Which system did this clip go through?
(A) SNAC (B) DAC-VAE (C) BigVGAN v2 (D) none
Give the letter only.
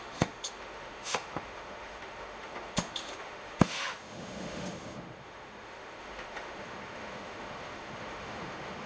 B